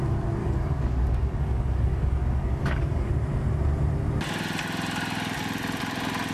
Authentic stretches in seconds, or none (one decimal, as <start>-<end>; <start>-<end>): 0.0-0.4; 3.1-6.3